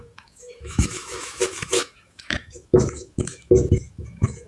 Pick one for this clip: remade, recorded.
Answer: remade